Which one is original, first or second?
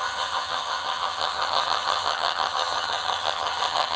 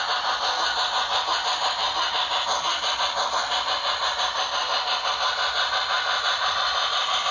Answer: second